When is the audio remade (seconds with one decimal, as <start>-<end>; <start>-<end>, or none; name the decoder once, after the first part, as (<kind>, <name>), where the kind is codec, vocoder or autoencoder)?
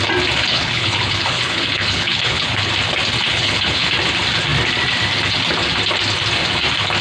0.5-2.7 (codec, HILCodec); 3.3-3.9